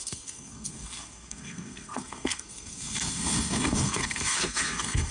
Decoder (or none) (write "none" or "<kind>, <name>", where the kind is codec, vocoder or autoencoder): codec, SNAC